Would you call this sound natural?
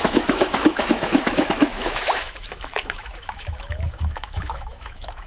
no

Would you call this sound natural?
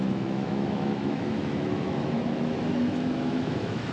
no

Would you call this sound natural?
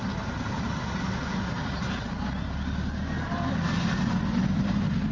yes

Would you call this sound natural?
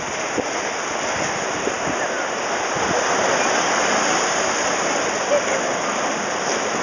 yes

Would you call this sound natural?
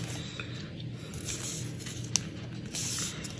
yes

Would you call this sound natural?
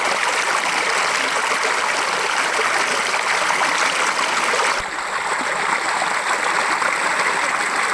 yes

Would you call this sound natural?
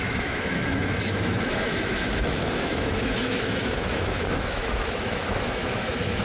no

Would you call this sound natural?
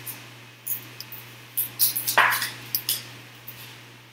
yes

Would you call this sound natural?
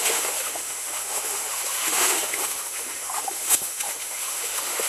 no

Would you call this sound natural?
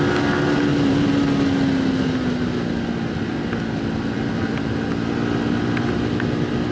yes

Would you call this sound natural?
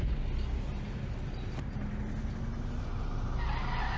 yes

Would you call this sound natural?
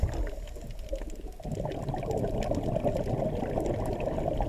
yes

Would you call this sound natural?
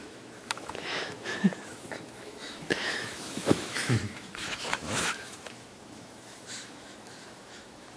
no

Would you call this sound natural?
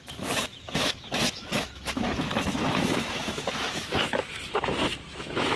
no